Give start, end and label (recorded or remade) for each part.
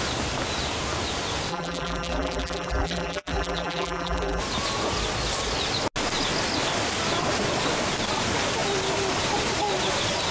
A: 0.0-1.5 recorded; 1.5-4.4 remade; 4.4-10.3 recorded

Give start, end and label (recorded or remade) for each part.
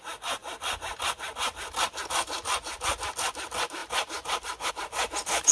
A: 0.0-3.8 recorded; 3.8-4.7 remade; 4.7-5.5 recorded